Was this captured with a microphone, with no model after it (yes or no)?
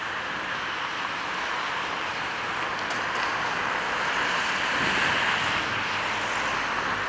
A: yes